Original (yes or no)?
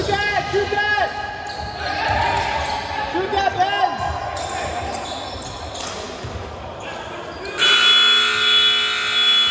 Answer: yes